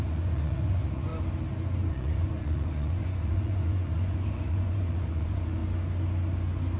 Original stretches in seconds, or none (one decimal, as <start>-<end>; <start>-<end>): 1.1-1.9; 5.6-6.8